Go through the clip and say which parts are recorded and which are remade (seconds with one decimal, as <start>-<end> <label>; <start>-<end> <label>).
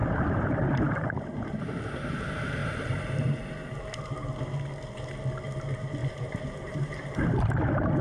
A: 0.0-1.8 remade; 1.8-2.6 recorded; 2.6-3.4 remade; 3.4-6.0 recorded; 6.0-7.3 remade; 7.3-8.0 recorded